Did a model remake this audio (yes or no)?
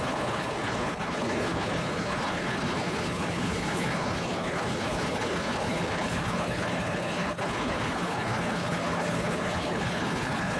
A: yes